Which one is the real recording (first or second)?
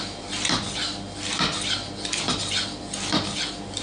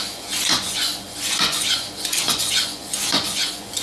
first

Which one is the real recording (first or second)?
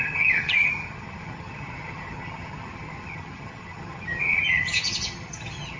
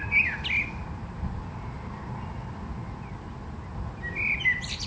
second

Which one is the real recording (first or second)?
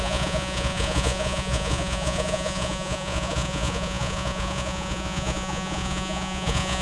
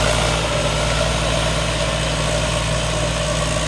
second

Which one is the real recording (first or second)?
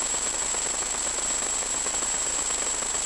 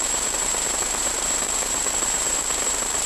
first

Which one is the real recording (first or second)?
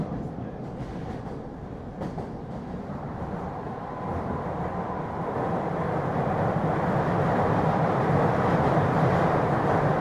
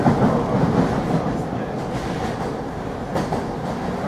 second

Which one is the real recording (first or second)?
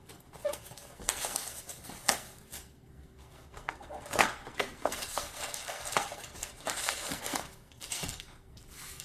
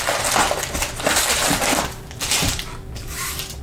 second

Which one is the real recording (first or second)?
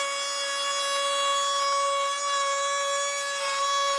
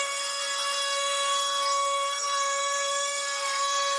first